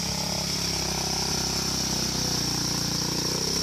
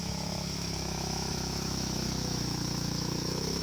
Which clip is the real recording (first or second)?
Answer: first